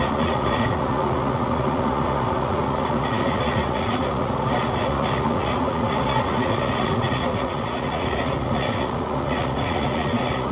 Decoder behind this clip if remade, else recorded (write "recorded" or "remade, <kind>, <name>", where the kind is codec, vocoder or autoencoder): remade, vocoder, Vocos